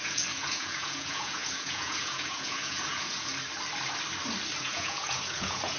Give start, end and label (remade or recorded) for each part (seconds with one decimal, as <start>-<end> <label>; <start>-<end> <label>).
0.0-3.3 remade; 3.3-4.6 recorded; 4.6-5.8 remade